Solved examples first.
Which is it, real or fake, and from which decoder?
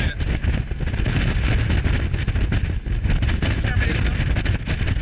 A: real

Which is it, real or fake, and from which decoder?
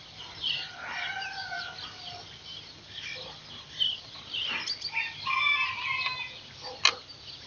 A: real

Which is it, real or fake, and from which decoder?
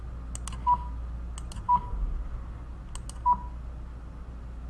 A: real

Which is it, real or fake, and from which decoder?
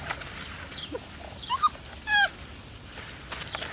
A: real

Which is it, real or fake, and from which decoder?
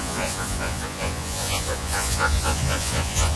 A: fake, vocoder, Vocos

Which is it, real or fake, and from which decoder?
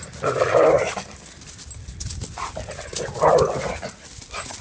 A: real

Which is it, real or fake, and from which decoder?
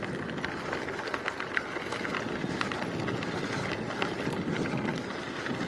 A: real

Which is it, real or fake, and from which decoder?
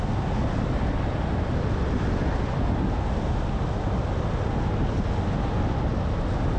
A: real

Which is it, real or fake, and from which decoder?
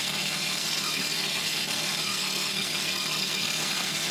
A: fake, codec, SNAC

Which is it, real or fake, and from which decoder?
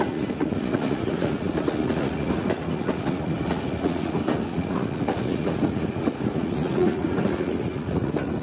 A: fake, vocoder, Vocos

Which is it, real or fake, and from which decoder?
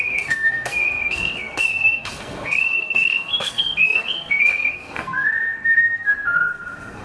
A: fake, codec, SNAC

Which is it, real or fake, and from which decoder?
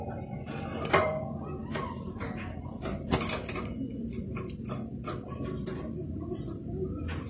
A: real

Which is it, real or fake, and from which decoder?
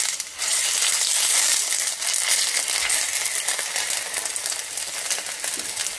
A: real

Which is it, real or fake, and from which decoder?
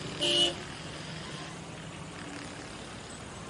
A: real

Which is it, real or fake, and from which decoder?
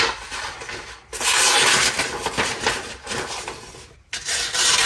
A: real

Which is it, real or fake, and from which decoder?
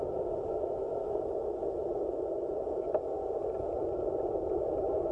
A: real